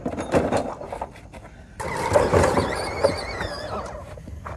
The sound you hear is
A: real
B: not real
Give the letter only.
A